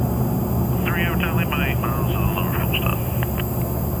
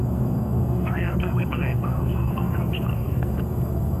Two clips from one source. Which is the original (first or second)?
first